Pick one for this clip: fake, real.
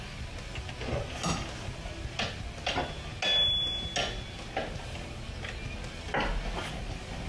real